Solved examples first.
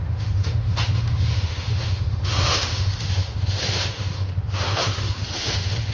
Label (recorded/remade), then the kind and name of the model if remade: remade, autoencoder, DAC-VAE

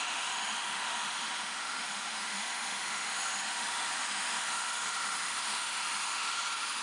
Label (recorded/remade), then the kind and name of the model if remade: remade, autoencoder, DAC-VAE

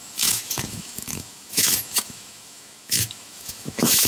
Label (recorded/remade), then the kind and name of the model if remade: remade, autoencoder, DAC-VAE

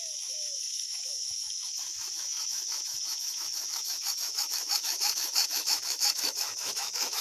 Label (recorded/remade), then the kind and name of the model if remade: remade, autoencoder, DAC-VAE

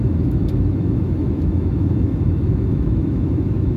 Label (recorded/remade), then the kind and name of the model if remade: remade, autoencoder, DAC-VAE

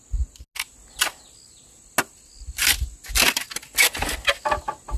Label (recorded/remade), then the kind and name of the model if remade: recorded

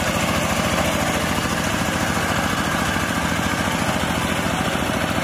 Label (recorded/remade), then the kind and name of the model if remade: recorded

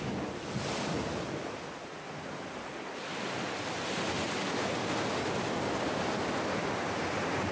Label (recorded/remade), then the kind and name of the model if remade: recorded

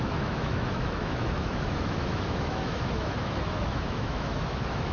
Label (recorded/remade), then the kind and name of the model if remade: remade, autoencoder, DAC-VAE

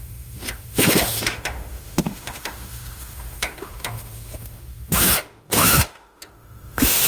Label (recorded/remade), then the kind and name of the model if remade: remade, autoencoder, DAC-VAE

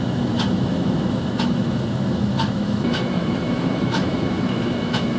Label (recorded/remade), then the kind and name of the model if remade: remade, autoencoder, DAC-VAE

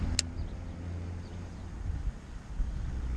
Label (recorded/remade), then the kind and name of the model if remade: recorded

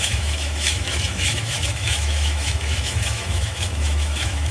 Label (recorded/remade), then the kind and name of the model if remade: remade, autoencoder, DAC-VAE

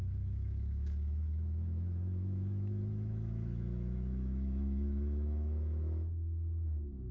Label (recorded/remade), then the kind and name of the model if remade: remade, autoencoder, DAC-VAE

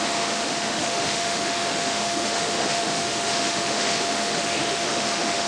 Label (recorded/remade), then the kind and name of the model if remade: remade, autoencoder, DAC-VAE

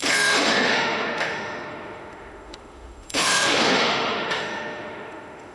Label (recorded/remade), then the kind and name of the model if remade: remade, autoencoder, DAC-VAE